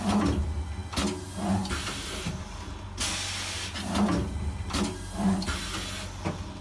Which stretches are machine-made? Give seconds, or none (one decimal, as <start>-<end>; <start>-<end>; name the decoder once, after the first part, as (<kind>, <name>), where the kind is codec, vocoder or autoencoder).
none